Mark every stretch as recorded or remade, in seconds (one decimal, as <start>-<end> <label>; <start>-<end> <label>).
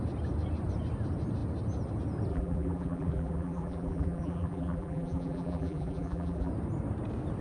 0.0-2.3 recorded; 2.3-6.5 remade; 6.5-7.4 recorded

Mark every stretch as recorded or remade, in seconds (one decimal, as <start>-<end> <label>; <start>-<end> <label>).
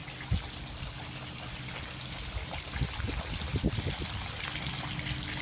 0.0-5.4 recorded